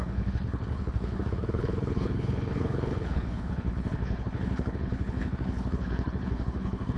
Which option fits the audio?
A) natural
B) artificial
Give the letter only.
B